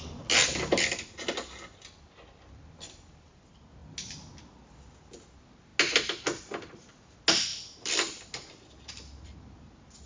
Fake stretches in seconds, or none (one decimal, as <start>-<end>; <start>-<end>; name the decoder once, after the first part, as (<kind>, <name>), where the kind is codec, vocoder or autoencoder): none